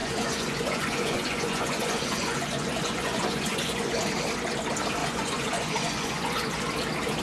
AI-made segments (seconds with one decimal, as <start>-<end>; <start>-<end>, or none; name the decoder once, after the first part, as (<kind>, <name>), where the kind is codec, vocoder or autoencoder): 0.0-4.0 (vocoder, Vocos); 5.0-6.6